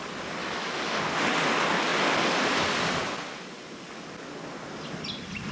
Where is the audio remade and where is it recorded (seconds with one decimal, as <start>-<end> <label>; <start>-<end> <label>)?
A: 0.0-0.4 recorded; 0.4-1.0 remade; 1.0-5.5 recorded